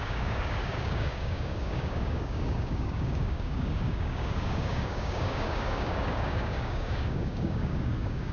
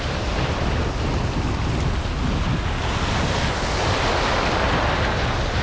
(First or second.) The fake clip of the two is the first